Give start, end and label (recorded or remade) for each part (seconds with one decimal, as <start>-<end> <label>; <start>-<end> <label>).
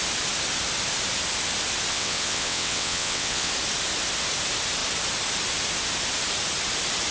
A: 0.0-1.9 recorded; 1.9-3.5 remade; 3.5-7.1 recorded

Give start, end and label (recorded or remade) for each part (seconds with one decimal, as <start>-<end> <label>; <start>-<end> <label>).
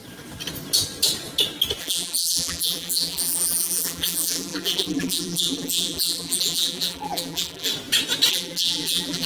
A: 0.0-1.8 recorded; 1.8-7.7 remade; 7.7-8.3 recorded; 8.3-9.3 remade